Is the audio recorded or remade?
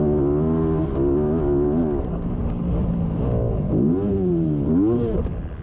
recorded